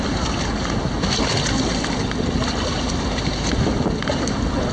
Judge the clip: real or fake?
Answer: real